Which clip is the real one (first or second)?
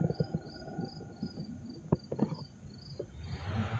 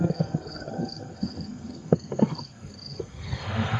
first